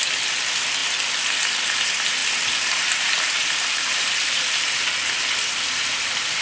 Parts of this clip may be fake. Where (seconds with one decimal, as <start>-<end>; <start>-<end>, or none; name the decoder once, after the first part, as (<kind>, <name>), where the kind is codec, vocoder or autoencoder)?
2.2-4.7 (vocoder, BigVGAN v2)